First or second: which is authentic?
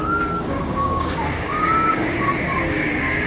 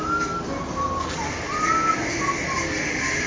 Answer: second